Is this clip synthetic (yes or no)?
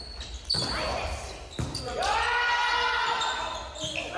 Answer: no